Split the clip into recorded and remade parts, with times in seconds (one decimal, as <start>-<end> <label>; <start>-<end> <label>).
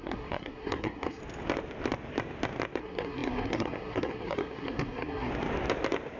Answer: 0.0-1.2 remade; 1.2-2.8 recorded; 2.8-5.3 remade; 5.3-6.2 recorded